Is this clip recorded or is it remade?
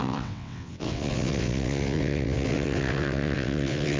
remade